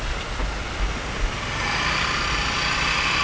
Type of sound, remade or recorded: recorded